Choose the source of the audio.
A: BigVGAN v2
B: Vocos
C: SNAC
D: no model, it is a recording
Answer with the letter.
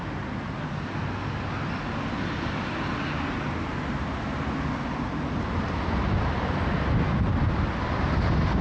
D